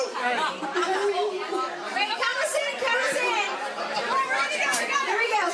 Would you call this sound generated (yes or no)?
yes